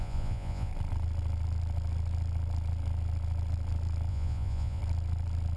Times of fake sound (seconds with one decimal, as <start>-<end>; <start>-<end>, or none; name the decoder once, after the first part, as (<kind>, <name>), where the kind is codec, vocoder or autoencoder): 0.0-0.7 (vocoder, Vocos); 4.1-4.8